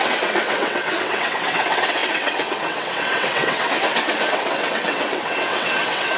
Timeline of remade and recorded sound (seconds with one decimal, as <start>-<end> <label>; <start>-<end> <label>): 0.0-6.2 remade